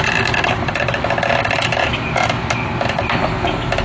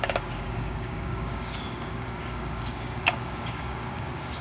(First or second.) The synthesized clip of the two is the second